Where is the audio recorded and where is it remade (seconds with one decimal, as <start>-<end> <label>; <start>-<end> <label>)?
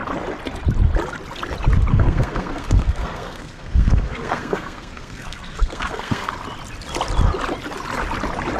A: 0.0-1.9 recorded; 1.9-6.3 remade; 6.3-8.6 recorded